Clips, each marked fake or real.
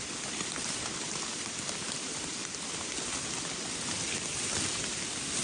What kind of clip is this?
real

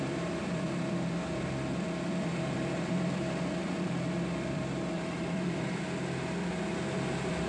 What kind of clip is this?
fake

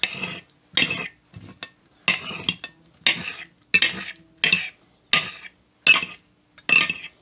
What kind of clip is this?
real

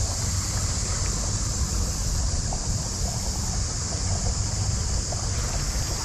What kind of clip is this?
real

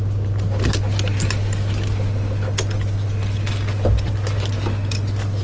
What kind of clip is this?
real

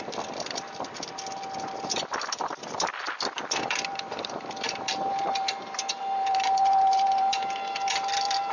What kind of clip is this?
fake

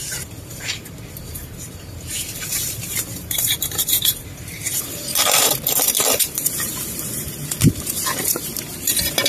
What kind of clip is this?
fake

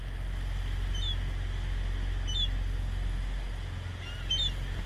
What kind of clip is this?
real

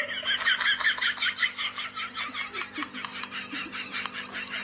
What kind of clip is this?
real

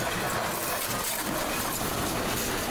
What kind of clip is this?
real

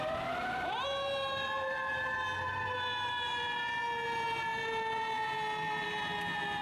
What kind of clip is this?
fake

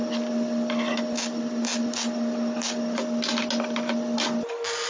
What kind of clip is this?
real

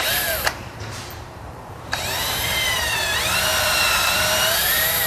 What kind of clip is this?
fake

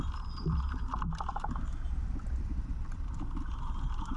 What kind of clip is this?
fake